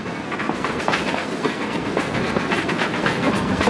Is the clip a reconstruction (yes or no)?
yes